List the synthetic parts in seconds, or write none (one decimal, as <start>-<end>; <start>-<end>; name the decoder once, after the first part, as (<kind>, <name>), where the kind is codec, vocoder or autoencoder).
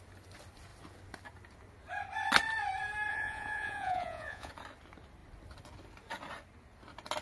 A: 3.1-4.5 (vocoder, Vocos)